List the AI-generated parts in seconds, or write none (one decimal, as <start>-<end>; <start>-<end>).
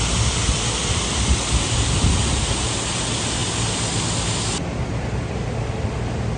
none